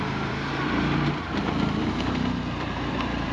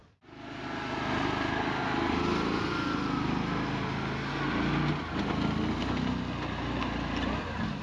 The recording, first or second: second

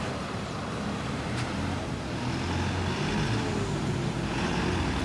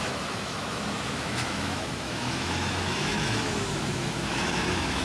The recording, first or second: first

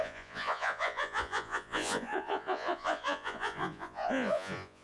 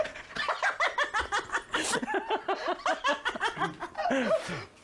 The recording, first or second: second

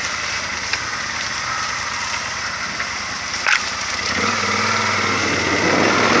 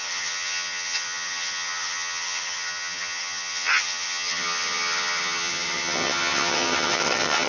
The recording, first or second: first